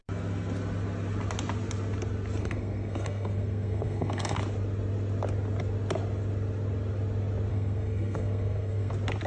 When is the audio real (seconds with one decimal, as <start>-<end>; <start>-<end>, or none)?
0.0-2.4; 4.4-7.5; 8.9-9.3